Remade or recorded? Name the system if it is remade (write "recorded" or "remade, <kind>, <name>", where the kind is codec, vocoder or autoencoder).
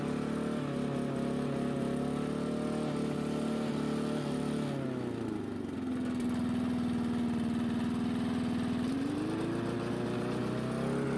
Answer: recorded